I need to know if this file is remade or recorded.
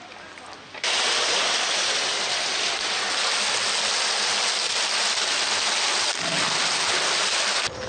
recorded